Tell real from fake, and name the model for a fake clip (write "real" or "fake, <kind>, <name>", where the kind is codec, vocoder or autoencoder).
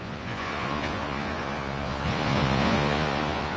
fake, vocoder, Vocos